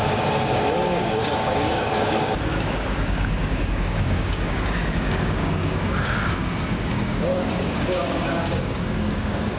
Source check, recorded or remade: remade